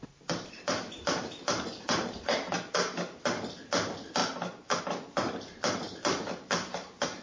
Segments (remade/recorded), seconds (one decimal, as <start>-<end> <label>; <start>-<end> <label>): 0.0-2.7 remade; 2.7-7.2 recorded